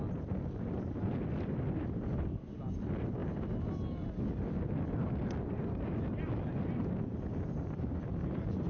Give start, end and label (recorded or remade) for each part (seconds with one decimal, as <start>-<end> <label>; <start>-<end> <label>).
0.0-8.7 recorded